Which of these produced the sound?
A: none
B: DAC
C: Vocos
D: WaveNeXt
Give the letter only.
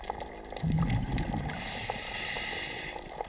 A